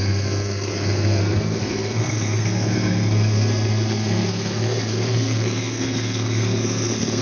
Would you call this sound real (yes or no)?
no